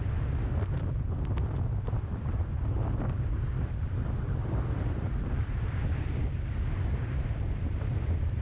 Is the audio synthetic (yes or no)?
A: yes